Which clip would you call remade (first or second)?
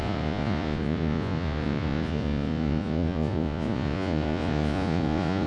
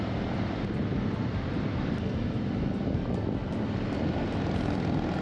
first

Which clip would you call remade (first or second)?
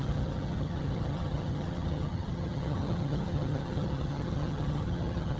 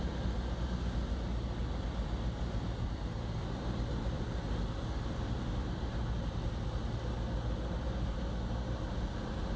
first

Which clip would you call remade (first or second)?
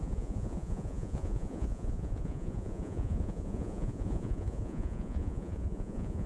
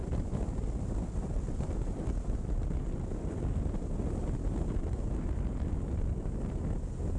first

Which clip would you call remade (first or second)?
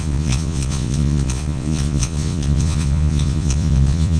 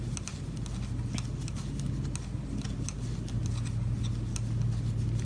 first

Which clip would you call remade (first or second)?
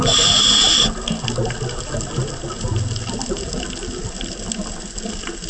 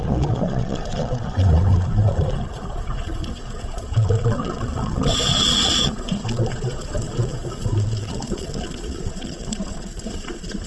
second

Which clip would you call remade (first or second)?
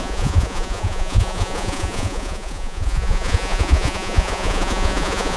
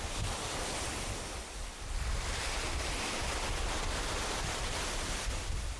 first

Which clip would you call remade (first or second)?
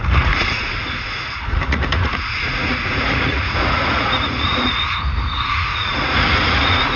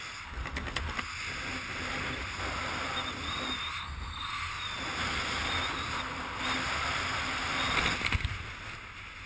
first